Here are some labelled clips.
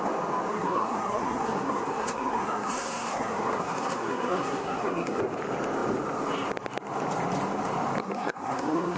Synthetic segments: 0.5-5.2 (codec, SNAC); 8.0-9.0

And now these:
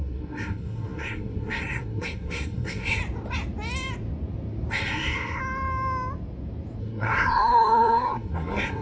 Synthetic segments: 0.0-3.0 (codec, SNAC); 4.7-5.4; 6.8-8.8

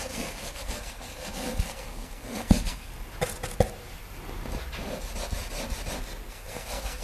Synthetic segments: 0.0-2.9 (codec, SNAC); 6.3-7.0